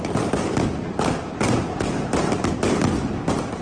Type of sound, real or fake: real